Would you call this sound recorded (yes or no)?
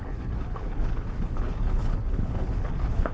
no